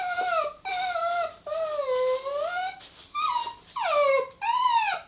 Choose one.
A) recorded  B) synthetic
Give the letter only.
A